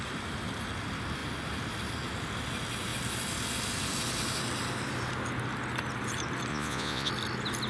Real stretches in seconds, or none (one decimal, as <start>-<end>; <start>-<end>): 0.0-6.5; 7.1-7.7